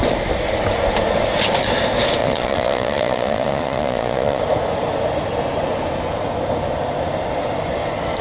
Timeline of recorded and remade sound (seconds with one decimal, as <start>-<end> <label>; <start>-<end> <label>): 0.0-2.2 recorded; 2.2-4.4 remade; 4.4-8.2 recorded